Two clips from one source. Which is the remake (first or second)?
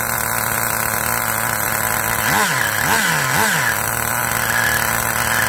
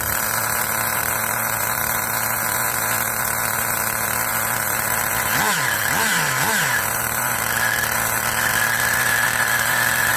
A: second